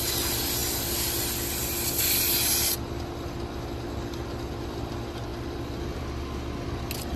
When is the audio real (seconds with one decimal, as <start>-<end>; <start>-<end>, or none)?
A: 0.0-7.2